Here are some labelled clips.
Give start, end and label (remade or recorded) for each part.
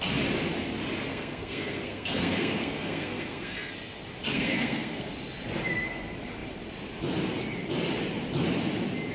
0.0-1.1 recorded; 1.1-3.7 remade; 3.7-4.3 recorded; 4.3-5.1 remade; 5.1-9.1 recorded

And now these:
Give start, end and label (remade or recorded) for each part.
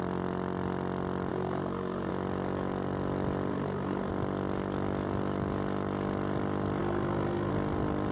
0.0-1.3 recorded; 1.3-2.1 remade; 2.1-3.5 recorded; 3.5-4.1 remade; 4.1-6.8 recorded; 6.8-7.5 remade; 7.5-8.1 recorded